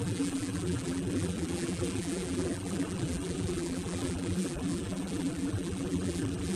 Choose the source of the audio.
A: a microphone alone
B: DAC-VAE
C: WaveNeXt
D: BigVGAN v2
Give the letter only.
D